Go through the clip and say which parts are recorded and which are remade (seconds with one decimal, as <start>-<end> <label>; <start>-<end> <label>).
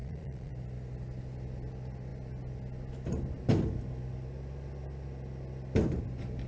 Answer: 0.0-0.5 remade; 0.5-6.5 recorded